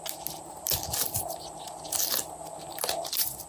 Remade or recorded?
recorded